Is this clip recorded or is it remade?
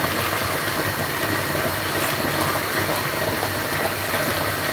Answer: recorded